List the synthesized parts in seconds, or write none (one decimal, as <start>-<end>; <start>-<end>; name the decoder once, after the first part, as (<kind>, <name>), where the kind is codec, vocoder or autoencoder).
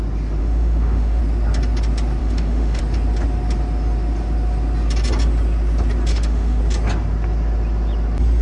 0.4-1.2 (autoencoder, DAC-VAE); 2.2-2.8; 6.1-6.6